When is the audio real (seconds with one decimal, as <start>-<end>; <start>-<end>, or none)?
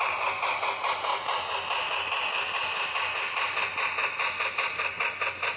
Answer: 1.1-4.5